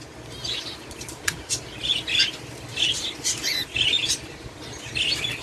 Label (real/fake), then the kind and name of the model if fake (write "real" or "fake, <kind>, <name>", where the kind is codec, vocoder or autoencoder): real